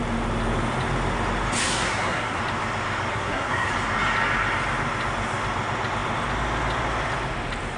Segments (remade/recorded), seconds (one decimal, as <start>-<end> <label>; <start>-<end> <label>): 0.0-1.6 recorded; 1.6-2.4 remade; 2.4-3.1 recorded; 3.1-3.7 remade; 3.7-7.8 recorded